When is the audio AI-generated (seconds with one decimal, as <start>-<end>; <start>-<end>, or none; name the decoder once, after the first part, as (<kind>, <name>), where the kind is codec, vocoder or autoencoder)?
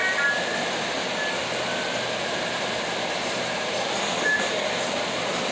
none